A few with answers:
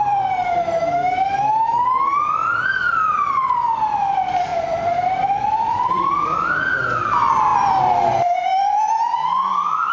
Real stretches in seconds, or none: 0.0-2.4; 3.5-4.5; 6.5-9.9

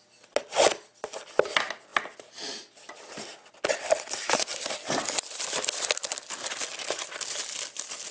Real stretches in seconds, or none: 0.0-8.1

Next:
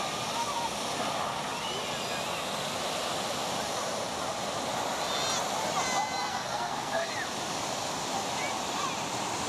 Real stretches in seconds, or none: 0.0-6.3; 7.1-9.5